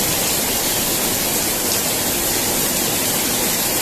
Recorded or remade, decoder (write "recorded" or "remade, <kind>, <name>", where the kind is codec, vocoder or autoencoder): recorded